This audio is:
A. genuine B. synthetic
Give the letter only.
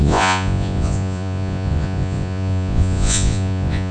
B